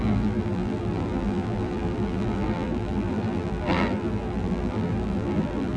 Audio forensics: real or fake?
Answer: fake